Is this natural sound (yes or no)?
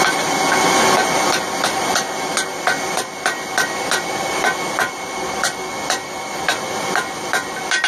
yes